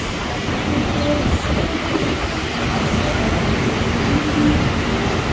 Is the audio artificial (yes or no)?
no